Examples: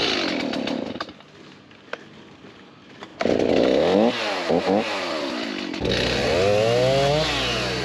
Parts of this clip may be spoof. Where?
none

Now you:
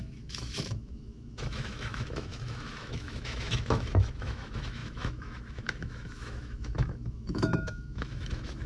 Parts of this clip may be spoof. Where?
0.0-8.7 (autoencoder, DAC-VAE)

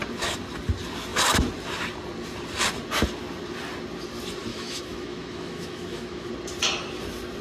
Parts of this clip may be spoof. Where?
4.5-6.3 (autoencoder, DAC-VAE)

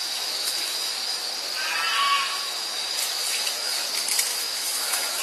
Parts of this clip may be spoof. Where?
0.0-1.3 (autoencoder, DAC-VAE); 2.0-3.9; 4.3-5.2

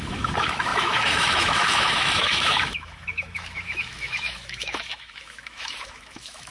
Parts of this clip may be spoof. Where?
0.0-6.5 (autoencoder, DAC-VAE)

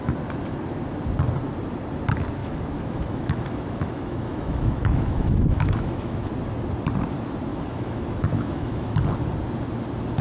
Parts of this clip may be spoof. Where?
2.4-6.3 (autoencoder, DAC-VAE); 7.5-8.9

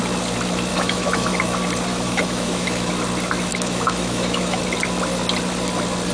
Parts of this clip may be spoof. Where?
0.7-1.4 (autoencoder, DAC-VAE); 1.9-2.9; 3.5-4.6

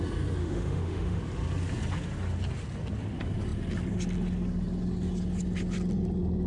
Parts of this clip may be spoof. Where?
0.4-1.2 (autoencoder, DAC-VAE)